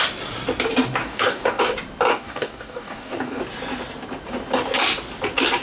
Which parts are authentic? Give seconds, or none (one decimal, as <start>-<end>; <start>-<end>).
0.0-1.0; 1.6-2.1; 3.4-5.6